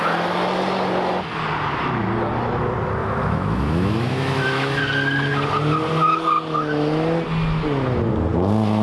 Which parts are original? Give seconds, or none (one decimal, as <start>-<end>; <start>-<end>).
0.0-3.0; 4.8-8.8